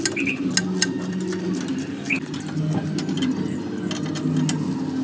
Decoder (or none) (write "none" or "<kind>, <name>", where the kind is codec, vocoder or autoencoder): none